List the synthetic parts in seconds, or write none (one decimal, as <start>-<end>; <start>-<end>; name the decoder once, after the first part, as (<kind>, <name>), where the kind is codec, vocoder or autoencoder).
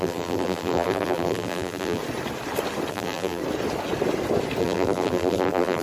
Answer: 0.0-2.0 (vocoder, BigVGAN v2); 2.9-3.4; 4.6-5.8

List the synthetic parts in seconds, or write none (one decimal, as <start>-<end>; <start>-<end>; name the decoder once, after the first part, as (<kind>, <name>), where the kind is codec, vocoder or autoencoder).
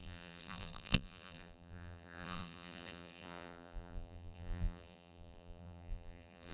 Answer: 0.0-6.5 (vocoder, BigVGAN v2)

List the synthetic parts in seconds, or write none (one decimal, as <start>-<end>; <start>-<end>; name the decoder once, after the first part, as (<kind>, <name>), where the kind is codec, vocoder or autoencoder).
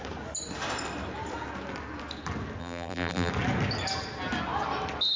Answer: 2.6-3.3 (vocoder, BigVGAN v2)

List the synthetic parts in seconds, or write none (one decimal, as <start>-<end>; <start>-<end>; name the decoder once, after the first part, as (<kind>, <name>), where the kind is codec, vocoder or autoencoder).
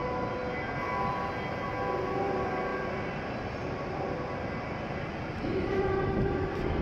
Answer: 0.4-1.2 (vocoder, BigVGAN v2); 2.7-5.9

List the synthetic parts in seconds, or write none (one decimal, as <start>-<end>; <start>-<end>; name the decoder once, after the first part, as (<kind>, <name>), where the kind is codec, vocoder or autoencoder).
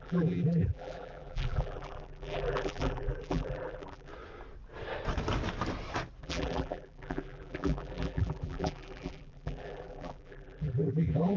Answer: 0.0-4.1 (vocoder, BigVGAN v2); 6.2-11.4